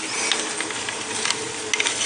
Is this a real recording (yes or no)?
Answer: yes